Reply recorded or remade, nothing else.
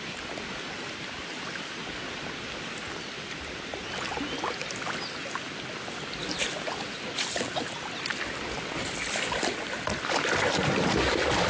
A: recorded